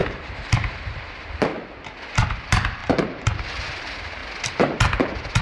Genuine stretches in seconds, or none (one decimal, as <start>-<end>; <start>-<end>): 1.5-2.0; 4.2-5.4